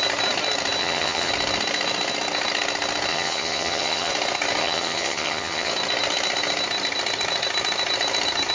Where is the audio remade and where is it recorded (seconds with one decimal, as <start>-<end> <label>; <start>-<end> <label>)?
0.0-0.8 recorded; 0.8-1.3 remade; 1.3-3.1 recorded; 3.1-4.1 remade; 4.1-4.6 recorded; 4.6-5.7 remade; 5.7-8.5 recorded